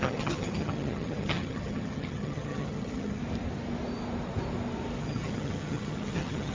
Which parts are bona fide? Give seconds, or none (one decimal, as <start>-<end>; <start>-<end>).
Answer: 3.2-5.0